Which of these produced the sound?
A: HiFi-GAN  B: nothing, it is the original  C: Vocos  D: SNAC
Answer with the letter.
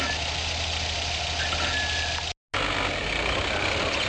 B